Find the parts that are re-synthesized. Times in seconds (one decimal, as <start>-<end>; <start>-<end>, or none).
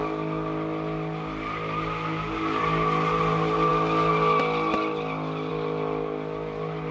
none